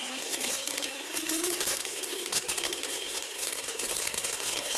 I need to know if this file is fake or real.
fake